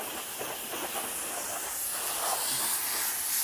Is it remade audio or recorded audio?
recorded